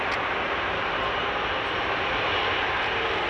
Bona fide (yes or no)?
yes